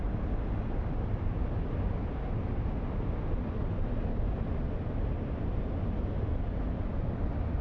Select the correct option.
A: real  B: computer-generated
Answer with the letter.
A